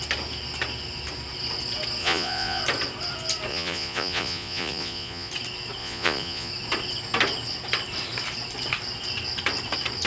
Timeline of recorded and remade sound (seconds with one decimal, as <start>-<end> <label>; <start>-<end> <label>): 0.0-2.0 recorded; 2.0-2.6 remade; 2.6-3.5 recorded; 3.5-5.3 remade; 5.3-5.8 recorded; 5.8-6.5 remade; 6.5-10.1 recorded